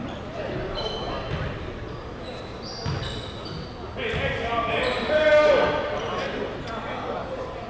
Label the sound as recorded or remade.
recorded